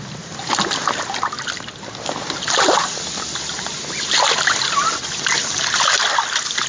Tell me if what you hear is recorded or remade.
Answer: recorded